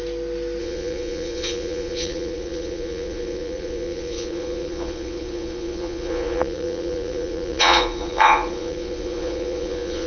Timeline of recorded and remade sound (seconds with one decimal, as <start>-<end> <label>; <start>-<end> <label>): 0.0-0.6 recorded; 0.6-10.1 remade